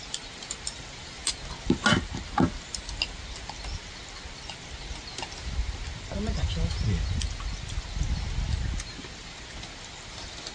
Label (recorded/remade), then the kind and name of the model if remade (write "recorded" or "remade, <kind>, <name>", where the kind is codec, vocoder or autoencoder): recorded